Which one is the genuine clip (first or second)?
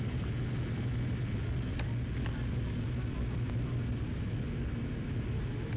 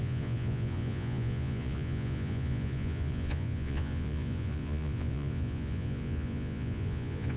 first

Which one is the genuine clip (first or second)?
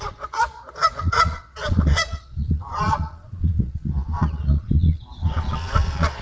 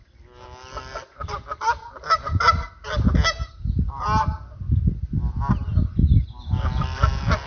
second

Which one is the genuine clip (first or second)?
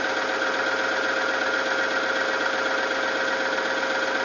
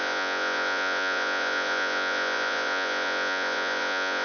first